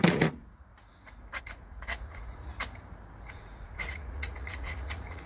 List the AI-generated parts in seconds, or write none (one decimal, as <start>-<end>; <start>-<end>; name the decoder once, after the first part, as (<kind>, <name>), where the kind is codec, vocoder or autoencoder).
0.0-0.7 (vocoder, Vocos); 1.4-2.5; 3.3-5.3